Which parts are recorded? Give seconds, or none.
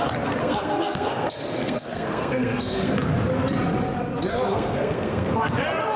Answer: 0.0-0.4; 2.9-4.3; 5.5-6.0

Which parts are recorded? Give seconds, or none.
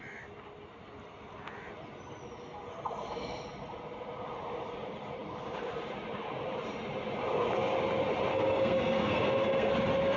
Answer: 0.0-8.3; 9.7-10.2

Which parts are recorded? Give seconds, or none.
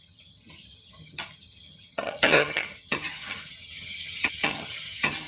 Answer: none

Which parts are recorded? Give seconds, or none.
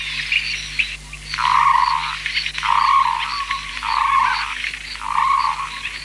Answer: 0.0-6.0